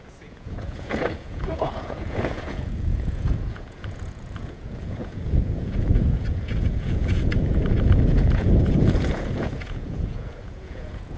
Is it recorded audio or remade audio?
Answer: remade